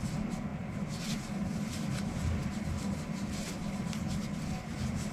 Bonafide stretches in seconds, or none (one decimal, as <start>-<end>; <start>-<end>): 0.0-5.1